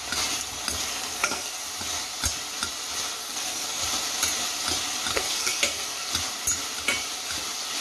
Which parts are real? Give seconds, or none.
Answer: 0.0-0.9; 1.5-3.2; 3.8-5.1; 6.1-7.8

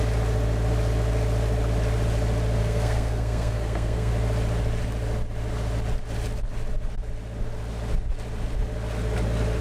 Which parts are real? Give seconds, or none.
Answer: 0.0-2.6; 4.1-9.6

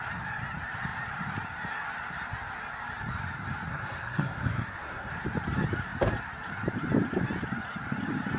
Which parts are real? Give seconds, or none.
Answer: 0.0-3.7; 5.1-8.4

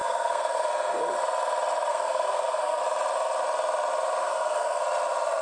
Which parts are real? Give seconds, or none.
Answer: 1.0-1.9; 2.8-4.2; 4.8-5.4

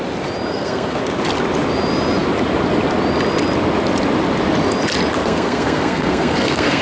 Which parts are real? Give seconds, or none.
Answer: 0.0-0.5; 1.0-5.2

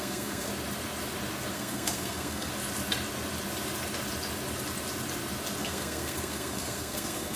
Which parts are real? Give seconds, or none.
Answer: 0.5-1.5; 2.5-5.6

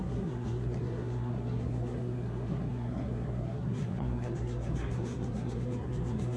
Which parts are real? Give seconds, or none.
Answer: none

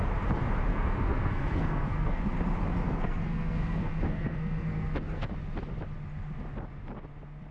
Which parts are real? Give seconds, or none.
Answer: 0.0-0.7; 2.2-2.8; 5.3-7.5